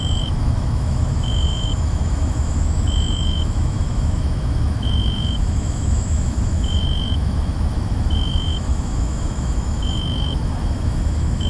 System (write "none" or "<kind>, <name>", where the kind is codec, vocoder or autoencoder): autoencoder, DAC-VAE